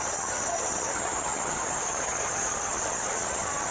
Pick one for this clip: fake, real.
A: fake